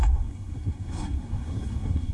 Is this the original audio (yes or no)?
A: no